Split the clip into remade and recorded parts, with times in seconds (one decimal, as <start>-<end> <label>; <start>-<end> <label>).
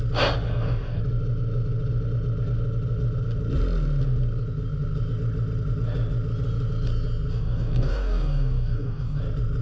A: 0.0-0.5 recorded; 0.5-1.0 remade; 1.0-7.3 recorded; 7.3-9.2 remade; 9.2-9.6 recorded